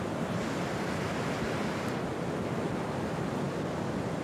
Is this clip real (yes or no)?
yes